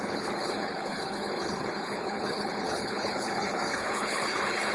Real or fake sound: fake